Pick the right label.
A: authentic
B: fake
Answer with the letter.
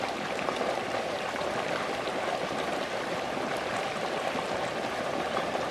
A